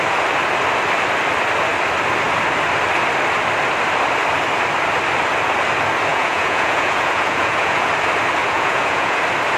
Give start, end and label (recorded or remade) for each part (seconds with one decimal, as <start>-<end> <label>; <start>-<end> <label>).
0.0-6.1 recorded; 6.1-7.9 remade; 7.9-8.4 recorded; 8.4-9.2 remade; 9.2-9.6 recorded